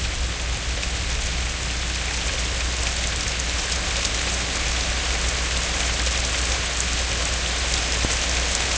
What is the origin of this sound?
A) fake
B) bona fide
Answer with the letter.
B